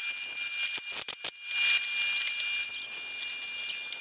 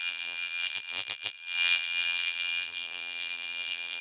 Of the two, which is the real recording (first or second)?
first